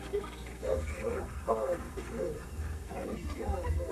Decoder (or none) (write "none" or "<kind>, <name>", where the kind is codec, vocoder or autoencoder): codec, SNAC